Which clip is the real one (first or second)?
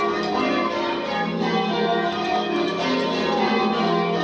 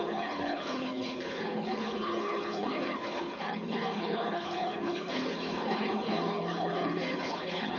first